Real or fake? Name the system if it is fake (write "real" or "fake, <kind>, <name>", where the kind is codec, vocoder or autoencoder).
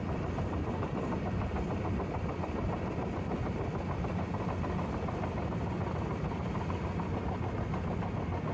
real